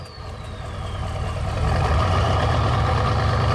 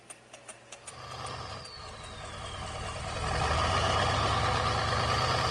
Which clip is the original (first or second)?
second